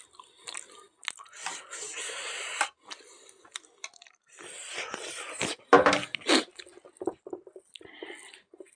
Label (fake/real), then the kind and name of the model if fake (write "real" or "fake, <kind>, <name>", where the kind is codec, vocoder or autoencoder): real